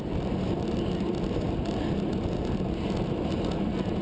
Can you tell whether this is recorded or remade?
recorded